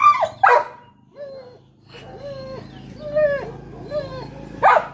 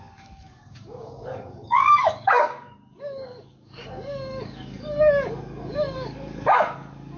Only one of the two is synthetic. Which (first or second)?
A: second